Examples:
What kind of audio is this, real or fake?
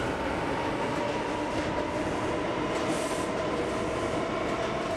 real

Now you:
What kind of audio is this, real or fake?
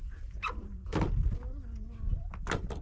real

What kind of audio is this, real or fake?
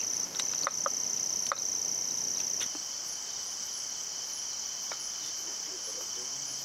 real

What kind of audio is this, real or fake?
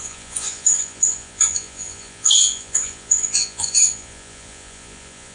fake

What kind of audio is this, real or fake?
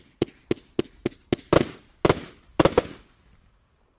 real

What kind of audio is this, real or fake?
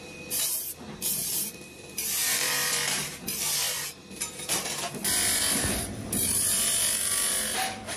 fake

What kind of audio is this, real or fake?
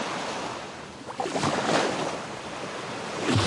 real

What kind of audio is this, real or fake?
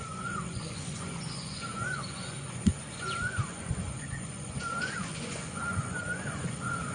fake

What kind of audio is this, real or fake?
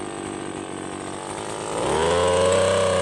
real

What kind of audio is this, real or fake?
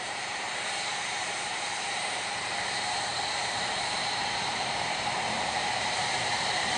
fake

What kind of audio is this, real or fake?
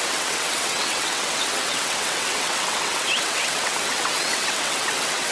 fake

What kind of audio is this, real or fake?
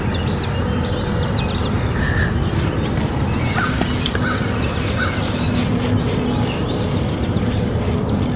real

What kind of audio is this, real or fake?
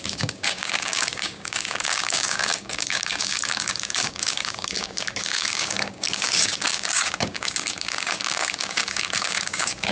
fake